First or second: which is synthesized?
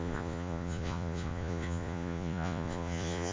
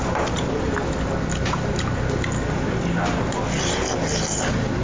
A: first